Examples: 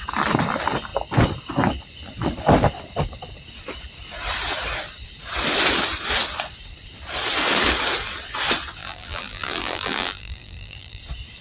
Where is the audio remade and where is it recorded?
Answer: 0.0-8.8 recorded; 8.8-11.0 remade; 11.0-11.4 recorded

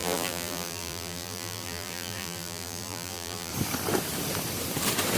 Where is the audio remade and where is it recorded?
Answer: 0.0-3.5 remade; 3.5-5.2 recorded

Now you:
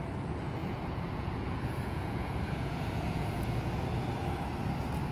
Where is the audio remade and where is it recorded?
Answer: 0.0-0.6 recorded; 0.6-3.7 remade; 3.7-5.1 recorded

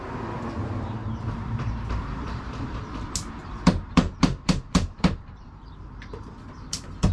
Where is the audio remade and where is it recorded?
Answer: 0.0-1.0 recorded; 1.0-2.8 remade; 2.8-3.4 recorded; 3.4-7.1 remade